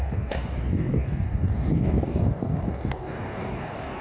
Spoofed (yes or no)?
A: yes